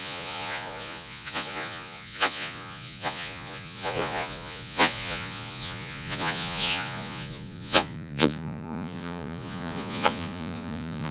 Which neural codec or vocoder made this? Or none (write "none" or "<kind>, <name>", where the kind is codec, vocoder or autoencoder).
vocoder, Vocos